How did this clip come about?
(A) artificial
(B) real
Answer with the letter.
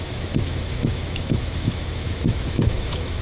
A